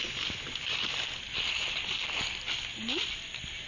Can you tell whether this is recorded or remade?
recorded